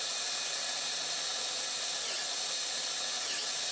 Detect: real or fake real